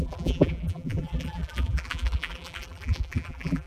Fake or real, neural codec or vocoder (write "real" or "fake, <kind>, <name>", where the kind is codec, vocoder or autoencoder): fake, vocoder, BigVGAN v2